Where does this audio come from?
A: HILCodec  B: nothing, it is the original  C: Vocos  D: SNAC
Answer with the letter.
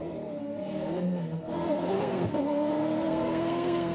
D